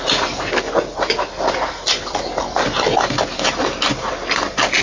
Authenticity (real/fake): real